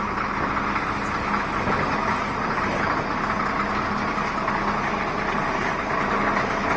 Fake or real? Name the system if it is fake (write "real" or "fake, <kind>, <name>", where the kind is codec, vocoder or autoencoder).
real